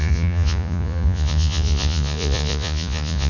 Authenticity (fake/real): fake